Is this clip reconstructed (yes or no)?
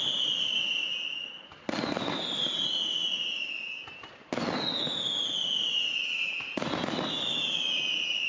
no